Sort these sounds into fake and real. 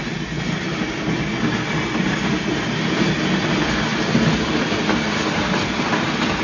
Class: real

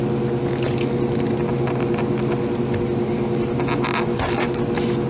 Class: real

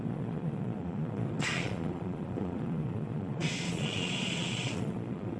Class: fake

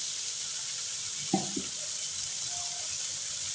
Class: real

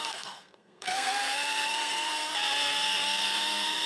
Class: fake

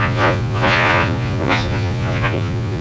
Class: fake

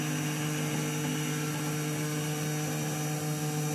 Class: real